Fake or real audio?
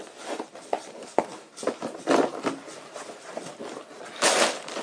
real